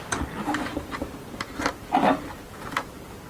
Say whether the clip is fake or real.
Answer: real